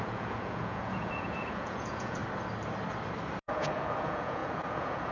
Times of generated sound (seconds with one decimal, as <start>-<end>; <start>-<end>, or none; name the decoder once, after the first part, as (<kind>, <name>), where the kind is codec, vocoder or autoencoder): 0.0-2.2 (vocoder, Vocos); 3.4-5.1